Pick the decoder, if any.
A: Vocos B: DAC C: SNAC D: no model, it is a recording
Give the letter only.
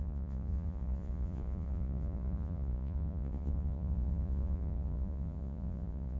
A